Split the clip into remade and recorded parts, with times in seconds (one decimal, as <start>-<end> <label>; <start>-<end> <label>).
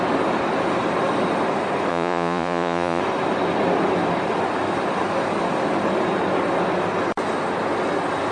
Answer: 0.0-1.9 recorded; 1.9-3.0 remade; 3.0-8.3 recorded